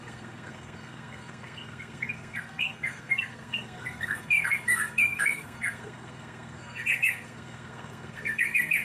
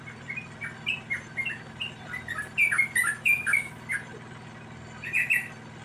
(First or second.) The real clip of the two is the second